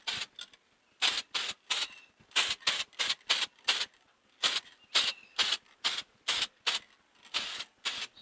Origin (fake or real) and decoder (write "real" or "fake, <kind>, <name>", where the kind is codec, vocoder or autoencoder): real